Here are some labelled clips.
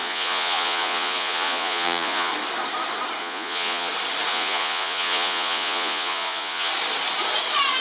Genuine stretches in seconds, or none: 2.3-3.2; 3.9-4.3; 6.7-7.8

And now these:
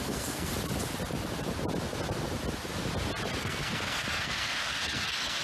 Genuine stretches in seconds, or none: 0.5-3.4

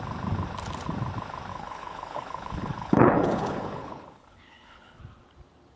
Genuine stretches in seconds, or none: 0.0-1.5; 5.0-5.8